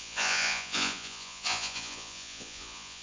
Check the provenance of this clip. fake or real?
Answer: fake